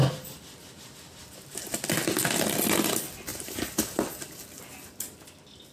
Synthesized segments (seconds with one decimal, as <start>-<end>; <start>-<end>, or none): 1.2-1.8; 3.3-4.0